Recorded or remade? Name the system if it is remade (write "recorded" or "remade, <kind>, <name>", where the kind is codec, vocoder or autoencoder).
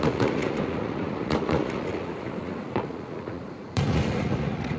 remade, vocoder, Vocos